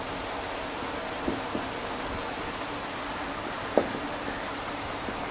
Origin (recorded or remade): remade